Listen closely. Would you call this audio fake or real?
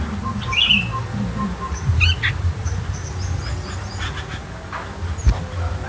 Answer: real